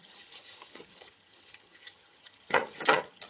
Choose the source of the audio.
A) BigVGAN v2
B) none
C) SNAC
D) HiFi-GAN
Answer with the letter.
D